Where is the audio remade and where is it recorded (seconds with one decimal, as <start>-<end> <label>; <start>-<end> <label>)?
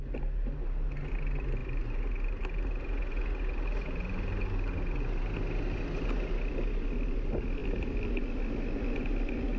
0.0-9.6 recorded